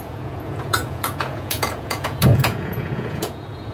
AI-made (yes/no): yes